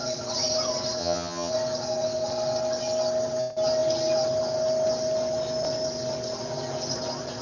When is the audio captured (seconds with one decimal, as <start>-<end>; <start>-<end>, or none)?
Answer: 0.0-1.0; 1.5-7.4